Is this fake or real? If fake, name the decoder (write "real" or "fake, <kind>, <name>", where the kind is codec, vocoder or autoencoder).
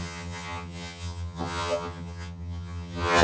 fake, vocoder, HiFi-GAN